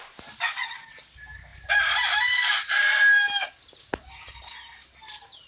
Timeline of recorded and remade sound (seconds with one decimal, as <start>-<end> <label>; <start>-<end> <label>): 0.0-1.5 recorded; 1.5-2.4 remade; 2.4-5.5 recorded